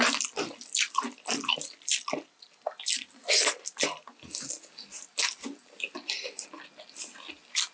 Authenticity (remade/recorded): recorded